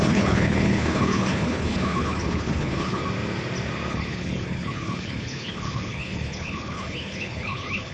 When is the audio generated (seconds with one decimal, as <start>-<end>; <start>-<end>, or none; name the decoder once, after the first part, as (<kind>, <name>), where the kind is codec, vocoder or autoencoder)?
0.0-3.0 (codec, HILCodec); 3.9-7.9